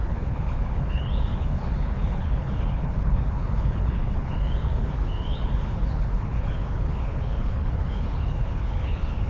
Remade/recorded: remade